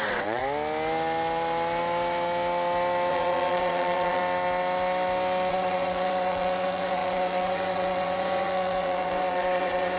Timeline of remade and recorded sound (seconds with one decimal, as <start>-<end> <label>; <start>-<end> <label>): 0.0-0.4 remade; 0.4-3.1 recorded; 3.1-4.2 remade; 4.2-5.5 recorded; 5.5-10.0 remade